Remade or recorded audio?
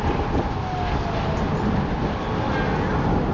recorded